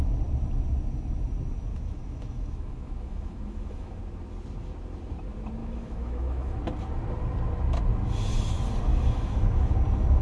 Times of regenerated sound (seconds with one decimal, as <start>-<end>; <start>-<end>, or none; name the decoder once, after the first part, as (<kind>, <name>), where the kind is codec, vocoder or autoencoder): 1.7-4.0 (autoencoder, DAC-VAE); 5.6-6.6; 8.9-9.7